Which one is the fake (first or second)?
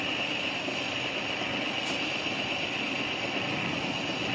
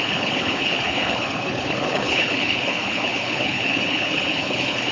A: second